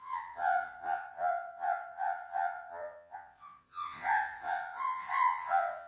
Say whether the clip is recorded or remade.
remade